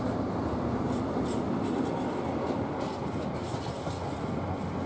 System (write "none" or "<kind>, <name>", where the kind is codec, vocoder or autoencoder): none